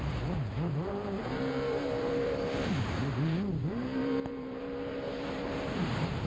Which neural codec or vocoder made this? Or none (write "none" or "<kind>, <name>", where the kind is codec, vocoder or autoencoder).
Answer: vocoder, BigVGAN v2